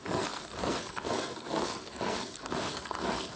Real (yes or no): no